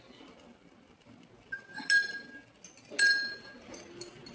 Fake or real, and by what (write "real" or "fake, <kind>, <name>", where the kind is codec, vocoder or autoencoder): real